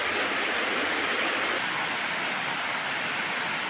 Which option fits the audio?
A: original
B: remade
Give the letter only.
A